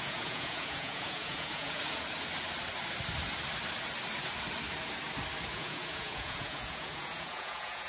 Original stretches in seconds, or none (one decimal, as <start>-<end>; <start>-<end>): 1.8-5.5